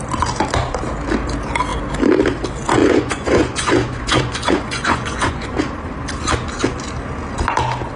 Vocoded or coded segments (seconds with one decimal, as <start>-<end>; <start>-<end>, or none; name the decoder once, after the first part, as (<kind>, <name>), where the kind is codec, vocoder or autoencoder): 2.8-5.6 (vocoder, Vocos)